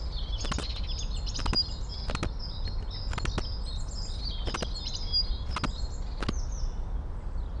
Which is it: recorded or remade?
recorded